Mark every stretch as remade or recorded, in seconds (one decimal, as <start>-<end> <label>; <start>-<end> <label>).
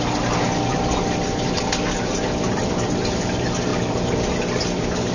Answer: 0.0-5.1 recorded